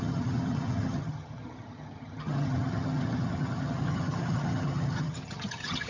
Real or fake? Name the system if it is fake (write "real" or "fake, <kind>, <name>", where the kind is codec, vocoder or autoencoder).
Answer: fake, vocoder, HiFi-GAN